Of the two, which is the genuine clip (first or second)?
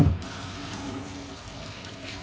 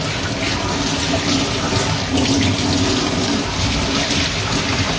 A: second